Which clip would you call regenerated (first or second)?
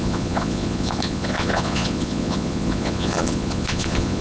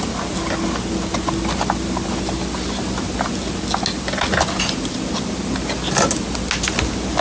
first